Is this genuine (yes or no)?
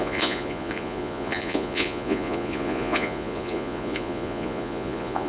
no